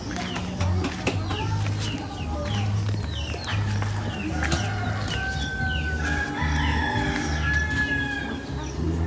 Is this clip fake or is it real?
real